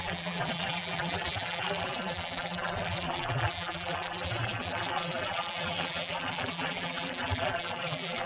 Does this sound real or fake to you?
fake